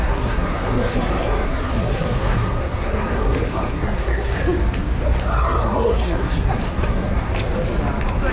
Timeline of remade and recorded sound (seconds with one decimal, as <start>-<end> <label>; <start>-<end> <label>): 0.0-4.4 remade; 4.4-5.2 recorded; 5.2-7.3 remade; 7.3-8.3 recorded